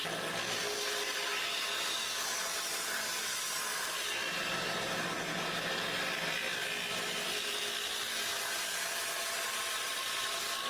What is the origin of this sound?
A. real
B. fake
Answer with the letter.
A